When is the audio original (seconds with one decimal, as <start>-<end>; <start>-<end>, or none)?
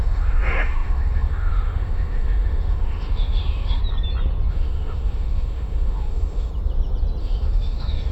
3.8-4.5; 6.5-7.2